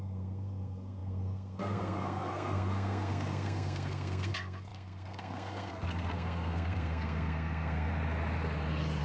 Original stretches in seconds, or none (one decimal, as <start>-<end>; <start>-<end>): 7.9-9.0